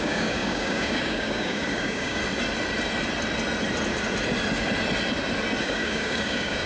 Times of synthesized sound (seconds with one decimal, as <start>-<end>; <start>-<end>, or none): 0.0-2.2; 5.6-6.7